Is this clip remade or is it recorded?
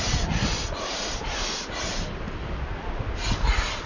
recorded